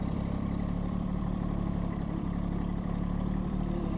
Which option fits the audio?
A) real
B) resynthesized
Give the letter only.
B